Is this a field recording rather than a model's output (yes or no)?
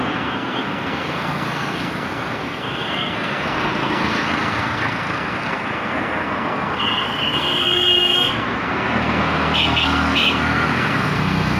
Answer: no